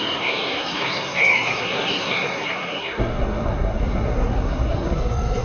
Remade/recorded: remade